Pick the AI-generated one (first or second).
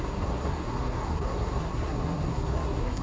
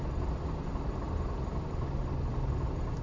first